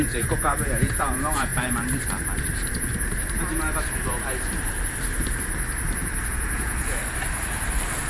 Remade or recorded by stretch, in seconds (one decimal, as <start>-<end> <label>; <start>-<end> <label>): 0.0-1.5 remade; 1.5-6.3 recorded; 6.3-7.0 remade; 7.0-8.1 recorded